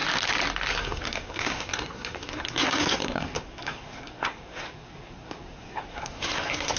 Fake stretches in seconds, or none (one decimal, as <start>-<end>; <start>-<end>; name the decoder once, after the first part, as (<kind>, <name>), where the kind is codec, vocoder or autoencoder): 0.7-6.8 (codec, SNAC)

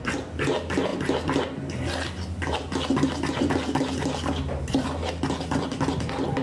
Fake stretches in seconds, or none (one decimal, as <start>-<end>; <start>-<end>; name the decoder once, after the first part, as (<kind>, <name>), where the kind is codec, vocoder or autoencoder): none

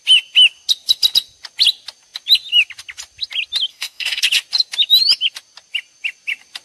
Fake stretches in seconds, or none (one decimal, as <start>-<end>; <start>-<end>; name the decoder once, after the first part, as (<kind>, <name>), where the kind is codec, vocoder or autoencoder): 3.7-4.2 (codec, SNAC)

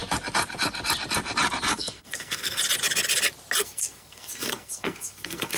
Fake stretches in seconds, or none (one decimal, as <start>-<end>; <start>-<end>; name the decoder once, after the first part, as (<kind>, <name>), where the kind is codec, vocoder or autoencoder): 1.7-2.6 (codec, SNAC); 3.6-5.6

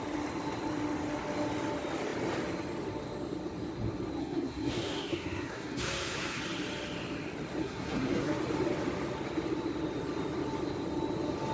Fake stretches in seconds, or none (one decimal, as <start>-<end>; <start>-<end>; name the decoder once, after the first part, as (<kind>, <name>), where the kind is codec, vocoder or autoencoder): 4.2-6.4 (codec, SNAC); 7.6-8.4